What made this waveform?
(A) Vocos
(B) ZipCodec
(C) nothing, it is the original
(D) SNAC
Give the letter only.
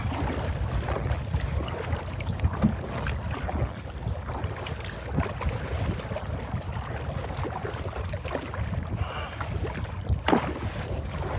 C